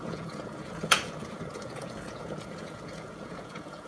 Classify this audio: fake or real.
fake